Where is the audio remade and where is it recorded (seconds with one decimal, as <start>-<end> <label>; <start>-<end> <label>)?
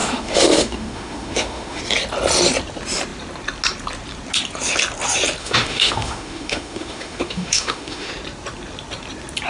0.0-1.8 remade; 1.8-5.4 recorded; 5.4-8.1 remade; 8.1-9.5 recorded